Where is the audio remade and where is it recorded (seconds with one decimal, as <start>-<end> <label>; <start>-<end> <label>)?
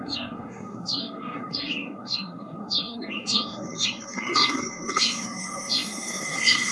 0.0-6.7 remade